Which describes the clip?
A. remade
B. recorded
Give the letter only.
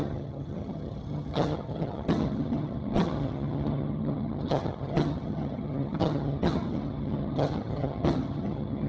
A